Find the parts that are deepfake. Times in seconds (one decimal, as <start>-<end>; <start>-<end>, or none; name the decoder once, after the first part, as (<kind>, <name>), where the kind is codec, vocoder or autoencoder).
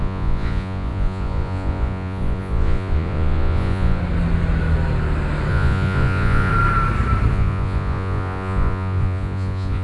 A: 0.0-4.0 (vocoder, Vocos); 5.5-6.5; 7.3-9.8